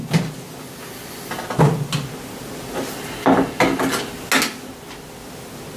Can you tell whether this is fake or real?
real